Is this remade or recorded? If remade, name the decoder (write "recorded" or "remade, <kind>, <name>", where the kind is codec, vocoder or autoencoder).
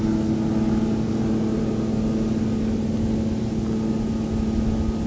recorded